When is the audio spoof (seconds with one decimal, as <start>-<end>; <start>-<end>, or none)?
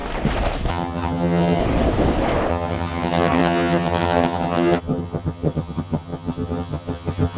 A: 0.7-1.6; 2.5-7.4